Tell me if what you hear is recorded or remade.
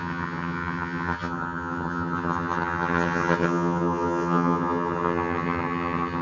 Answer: remade